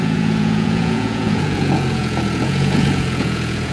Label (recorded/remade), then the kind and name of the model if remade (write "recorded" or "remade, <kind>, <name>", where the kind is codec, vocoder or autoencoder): remade, vocoder, Vocos